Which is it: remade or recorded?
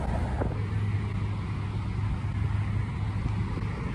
recorded